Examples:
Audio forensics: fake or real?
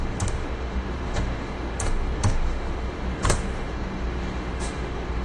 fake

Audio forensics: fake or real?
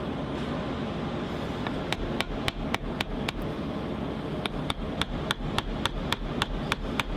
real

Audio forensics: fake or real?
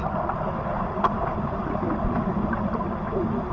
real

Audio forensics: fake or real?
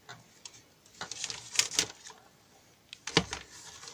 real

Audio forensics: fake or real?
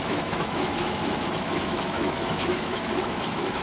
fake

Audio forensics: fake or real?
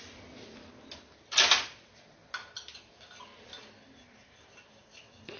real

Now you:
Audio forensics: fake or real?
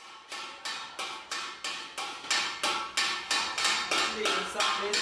real